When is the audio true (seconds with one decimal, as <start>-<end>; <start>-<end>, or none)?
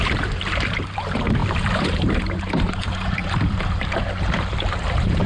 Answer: none